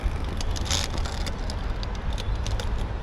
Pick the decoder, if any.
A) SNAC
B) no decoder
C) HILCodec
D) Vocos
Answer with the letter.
B